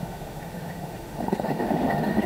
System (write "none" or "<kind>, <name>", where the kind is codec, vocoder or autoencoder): autoencoder, DAC-VAE